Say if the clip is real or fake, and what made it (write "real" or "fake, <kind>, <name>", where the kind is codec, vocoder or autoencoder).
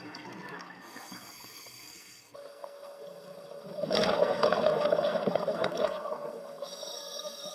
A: fake, codec, SNAC